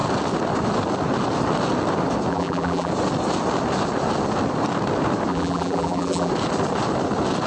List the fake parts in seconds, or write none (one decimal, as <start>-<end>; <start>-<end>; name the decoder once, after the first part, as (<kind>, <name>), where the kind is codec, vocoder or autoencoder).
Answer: 2.3-2.9 (vocoder, BigVGAN v2); 5.3-6.3